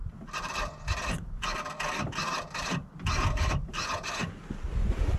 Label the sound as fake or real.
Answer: real